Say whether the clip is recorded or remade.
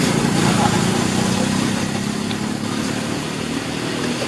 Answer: recorded